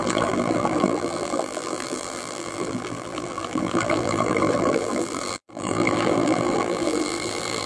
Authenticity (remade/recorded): remade